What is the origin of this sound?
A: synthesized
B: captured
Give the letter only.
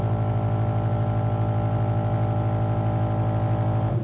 B